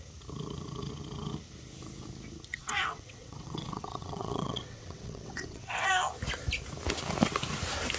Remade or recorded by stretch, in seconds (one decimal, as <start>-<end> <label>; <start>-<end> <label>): 0.0-2.5 recorded; 2.5-5.9 remade; 5.9-8.0 recorded